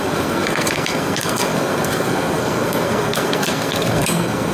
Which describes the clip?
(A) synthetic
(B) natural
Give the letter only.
A